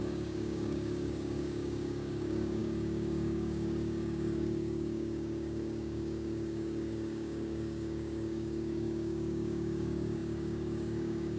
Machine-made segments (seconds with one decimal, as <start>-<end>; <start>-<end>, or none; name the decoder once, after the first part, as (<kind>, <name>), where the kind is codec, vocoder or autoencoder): 0.0-11.4 (codec, DAC)

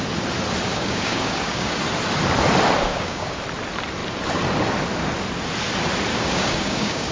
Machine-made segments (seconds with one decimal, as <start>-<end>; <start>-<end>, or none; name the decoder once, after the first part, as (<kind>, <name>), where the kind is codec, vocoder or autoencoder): 0.7-1.7 (codec, DAC); 2.9-3.4; 6.1-7.1

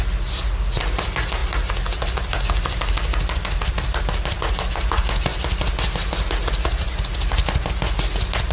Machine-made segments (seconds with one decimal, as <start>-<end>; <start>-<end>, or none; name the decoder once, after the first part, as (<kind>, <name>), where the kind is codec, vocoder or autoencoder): none

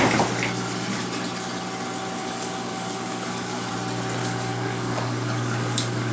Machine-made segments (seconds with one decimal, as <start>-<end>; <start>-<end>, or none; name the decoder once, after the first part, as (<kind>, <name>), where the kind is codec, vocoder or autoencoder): 2.2-3.7 (codec, DAC); 4.2-6.1